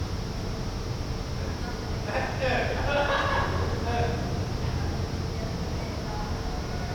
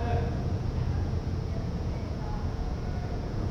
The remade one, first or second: second